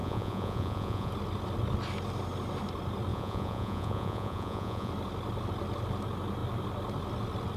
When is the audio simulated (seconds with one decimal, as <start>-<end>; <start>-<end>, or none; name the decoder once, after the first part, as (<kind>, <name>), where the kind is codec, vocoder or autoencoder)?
0.0-1.1 (vocoder, Vocos); 3.1-4.9